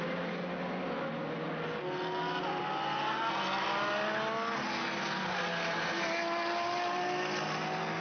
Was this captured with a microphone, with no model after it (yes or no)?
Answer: yes